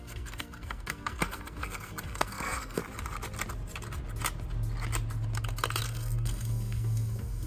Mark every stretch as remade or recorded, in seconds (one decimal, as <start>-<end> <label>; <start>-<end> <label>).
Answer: 0.0-2.8 remade; 2.8-5.8 recorded; 5.8-7.5 remade